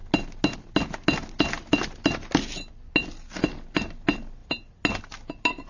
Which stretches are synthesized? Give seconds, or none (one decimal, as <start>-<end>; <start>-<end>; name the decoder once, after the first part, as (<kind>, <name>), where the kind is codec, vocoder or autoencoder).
none